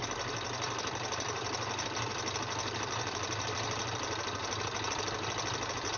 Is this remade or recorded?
recorded